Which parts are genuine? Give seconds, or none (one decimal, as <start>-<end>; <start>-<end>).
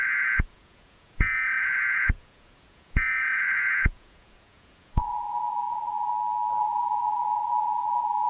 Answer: 6.1-6.6